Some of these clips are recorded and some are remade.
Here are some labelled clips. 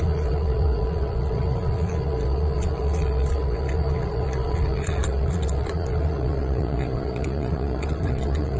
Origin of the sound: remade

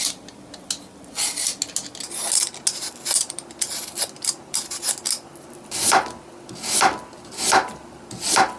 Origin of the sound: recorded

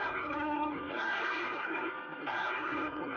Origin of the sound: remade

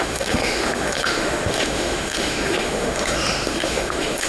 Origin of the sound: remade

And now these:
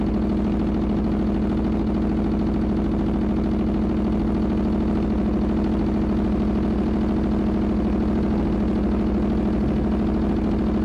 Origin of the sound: recorded